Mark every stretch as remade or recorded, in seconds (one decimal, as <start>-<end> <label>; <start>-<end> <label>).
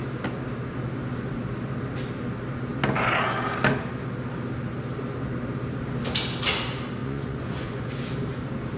0.0-7.0 recorded; 7.0-7.9 remade; 7.9-8.8 recorded